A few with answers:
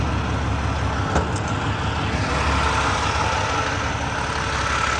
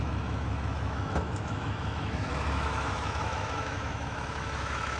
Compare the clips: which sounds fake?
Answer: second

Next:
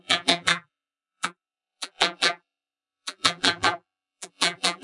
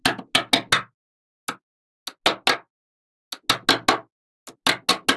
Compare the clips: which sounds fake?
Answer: first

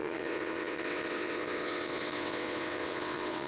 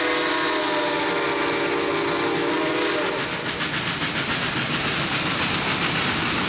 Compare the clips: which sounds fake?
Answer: first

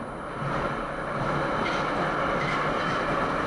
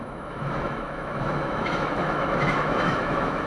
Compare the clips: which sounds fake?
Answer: second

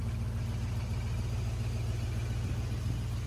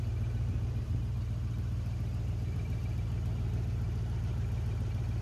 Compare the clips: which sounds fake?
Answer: second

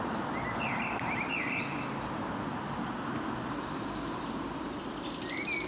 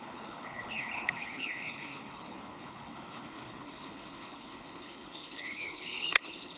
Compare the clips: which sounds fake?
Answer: second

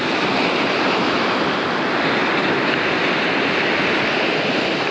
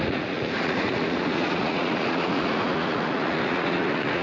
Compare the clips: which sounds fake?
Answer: second